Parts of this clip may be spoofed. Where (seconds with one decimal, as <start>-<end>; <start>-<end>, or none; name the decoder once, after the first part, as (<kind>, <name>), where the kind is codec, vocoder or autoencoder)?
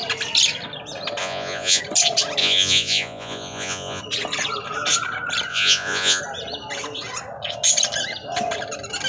1.2-1.8 (vocoder, Vocos); 2.4-4.0; 5.5-6.2